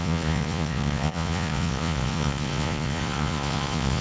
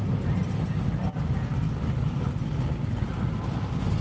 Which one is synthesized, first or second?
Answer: first